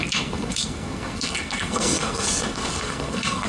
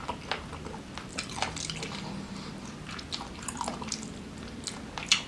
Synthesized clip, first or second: first